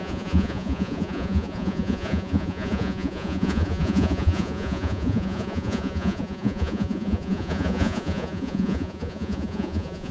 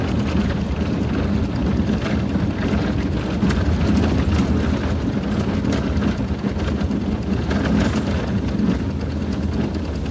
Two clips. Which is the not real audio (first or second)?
first